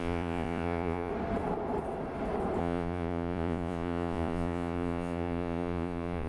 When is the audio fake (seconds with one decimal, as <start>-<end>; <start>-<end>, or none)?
0.0-1.1; 2.6-6.3